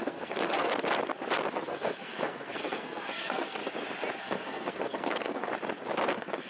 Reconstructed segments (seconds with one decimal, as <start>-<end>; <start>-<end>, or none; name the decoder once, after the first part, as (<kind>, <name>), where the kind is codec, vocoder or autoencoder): 0.0-0.7 (codec, SNAC); 1.5-3.6; 4.2-5.5; 6.1-6.5